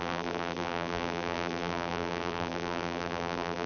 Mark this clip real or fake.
fake